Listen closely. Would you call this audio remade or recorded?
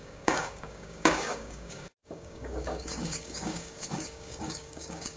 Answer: remade